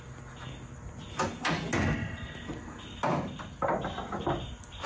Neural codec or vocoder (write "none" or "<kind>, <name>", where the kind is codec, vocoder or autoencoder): none